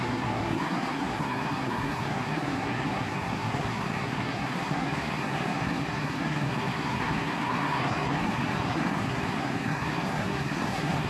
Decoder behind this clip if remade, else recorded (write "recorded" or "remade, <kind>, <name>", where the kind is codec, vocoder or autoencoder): remade, codec, SNAC